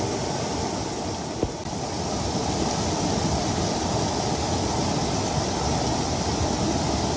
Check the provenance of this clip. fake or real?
real